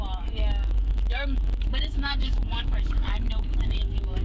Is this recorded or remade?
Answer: remade